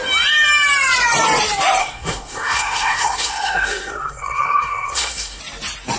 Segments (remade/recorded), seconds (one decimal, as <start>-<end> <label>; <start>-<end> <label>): 0.0-1.8 recorded; 1.8-5.4 remade; 5.4-6.0 recorded